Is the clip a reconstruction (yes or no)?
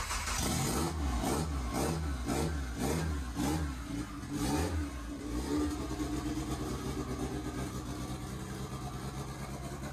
no